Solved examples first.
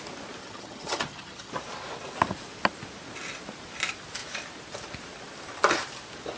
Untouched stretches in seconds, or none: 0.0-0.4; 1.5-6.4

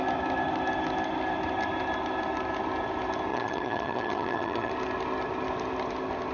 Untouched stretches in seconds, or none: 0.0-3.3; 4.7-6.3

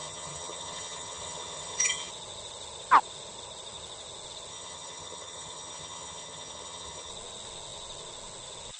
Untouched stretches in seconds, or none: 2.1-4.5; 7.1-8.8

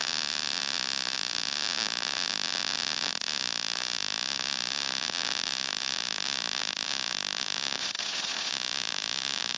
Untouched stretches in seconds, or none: 0.0-7.8; 8.5-9.6